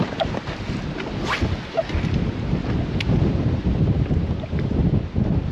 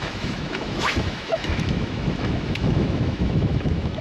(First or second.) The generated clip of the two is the second